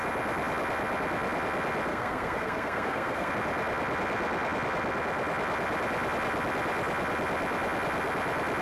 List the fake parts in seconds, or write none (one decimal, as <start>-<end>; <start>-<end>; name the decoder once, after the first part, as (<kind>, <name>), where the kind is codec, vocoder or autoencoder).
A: 1.9-3.3 (codec, SNAC)